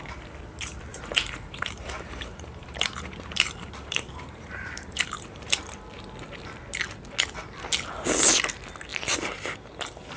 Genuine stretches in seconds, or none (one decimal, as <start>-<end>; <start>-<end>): 0.0-0.9; 5.6-10.2